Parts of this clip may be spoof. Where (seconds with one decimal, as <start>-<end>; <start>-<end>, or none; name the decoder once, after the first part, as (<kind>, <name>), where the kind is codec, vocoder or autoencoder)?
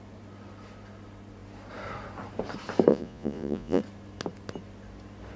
2.9-3.8 (vocoder, Vocos)